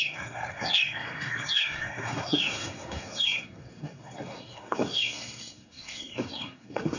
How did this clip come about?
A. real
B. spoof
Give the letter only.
B